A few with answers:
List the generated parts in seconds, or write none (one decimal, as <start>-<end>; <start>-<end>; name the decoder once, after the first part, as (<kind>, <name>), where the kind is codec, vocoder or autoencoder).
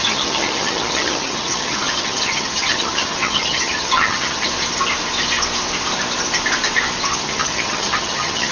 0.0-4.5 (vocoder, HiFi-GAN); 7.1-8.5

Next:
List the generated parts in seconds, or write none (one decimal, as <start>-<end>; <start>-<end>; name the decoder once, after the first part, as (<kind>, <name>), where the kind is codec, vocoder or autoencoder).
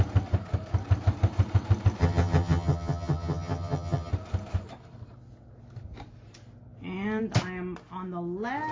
2.0-4.1 (vocoder, HiFi-GAN)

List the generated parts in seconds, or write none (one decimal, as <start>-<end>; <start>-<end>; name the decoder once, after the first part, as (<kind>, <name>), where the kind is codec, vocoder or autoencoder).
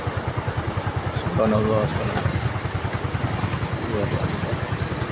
none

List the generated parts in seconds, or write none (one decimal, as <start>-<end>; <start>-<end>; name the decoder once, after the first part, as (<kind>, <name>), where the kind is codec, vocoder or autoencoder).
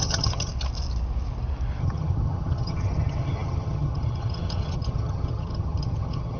0.0-0.5 (vocoder, HiFi-GAN); 1.8-6.4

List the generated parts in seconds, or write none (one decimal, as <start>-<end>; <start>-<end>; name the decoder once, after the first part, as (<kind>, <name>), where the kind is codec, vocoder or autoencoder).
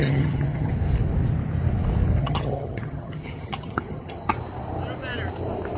0.0-0.7 (vocoder, HiFi-GAN); 2.2-4.3